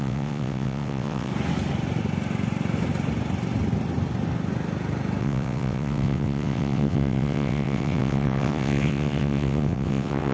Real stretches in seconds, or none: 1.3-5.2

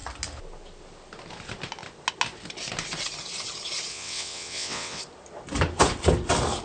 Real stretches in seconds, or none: 0.0-3.9; 5.0-6.6

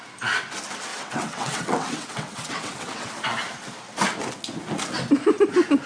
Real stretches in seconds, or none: 0.0-0.9; 3.1-5.9

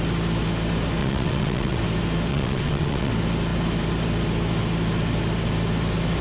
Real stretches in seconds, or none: 0.0-1.0; 1.8-2.3; 3.1-6.2